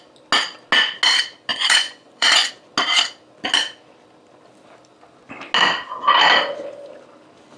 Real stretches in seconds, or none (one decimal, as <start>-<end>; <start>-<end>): 0.0-1.5; 2.5-7.6